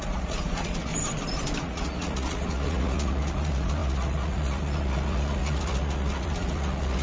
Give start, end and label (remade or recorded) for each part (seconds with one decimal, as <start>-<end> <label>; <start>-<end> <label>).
0.0-0.9 remade; 0.9-1.6 recorded; 1.6-7.0 remade